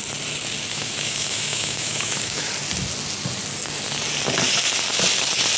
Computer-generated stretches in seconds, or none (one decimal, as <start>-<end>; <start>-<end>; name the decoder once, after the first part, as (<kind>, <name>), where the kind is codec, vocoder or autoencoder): 0.7-2.5 (autoencoder, DAC-VAE)